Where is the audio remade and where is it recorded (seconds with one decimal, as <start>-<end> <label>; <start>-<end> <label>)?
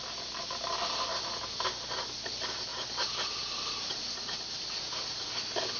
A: 0.0-5.8 recorded